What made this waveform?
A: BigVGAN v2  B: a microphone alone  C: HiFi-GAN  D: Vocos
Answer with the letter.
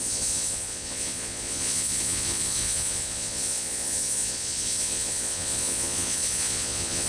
D